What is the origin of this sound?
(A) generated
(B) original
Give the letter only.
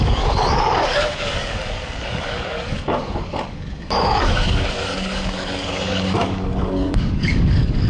A